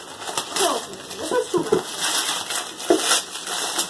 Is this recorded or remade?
recorded